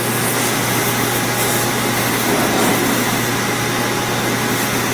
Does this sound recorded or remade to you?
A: recorded